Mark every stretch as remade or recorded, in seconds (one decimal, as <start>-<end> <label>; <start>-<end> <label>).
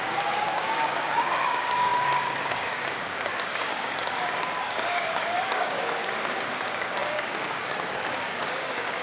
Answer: 0.0-9.0 remade